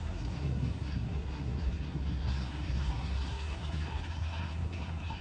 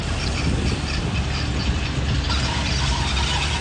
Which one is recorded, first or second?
second